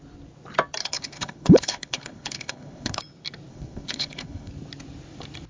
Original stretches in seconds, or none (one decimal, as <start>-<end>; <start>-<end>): 0.0-0.8; 3.0-3.5; 4.5-5.5